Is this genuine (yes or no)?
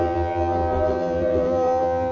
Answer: no